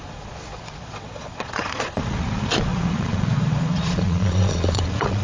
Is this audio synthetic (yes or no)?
yes